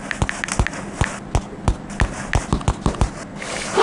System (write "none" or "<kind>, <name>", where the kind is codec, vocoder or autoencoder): none